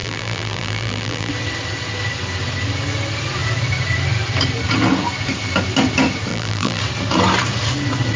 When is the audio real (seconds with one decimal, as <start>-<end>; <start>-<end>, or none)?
1.3-6.3; 6.8-8.2